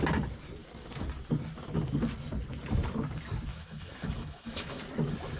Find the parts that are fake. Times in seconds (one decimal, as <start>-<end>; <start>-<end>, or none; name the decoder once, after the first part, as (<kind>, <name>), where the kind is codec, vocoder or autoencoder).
3.5-4.8 (autoencoder, DAC-VAE)